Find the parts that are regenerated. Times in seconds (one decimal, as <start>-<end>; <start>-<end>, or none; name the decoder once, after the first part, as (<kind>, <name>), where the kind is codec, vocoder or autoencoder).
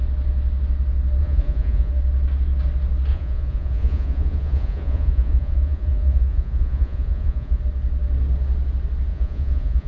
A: 1.2-1.9 (vocoder, Vocos); 3.1-7.6; 9.1-9.9